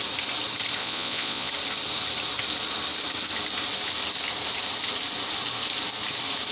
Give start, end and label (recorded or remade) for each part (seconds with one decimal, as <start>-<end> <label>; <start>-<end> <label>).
0.0-0.8 recorded; 0.8-1.5 remade; 1.5-6.5 recorded